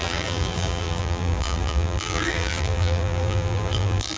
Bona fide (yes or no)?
no